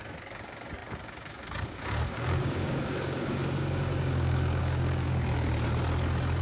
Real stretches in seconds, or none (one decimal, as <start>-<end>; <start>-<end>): 5.3-6.4